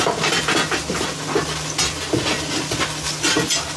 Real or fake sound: real